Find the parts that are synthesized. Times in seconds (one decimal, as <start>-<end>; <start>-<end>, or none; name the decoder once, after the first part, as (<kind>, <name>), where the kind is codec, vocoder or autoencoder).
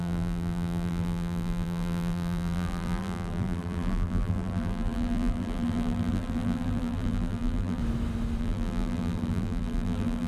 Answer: 0.0-7.8 (vocoder, BigVGAN v2); 8.4-10.3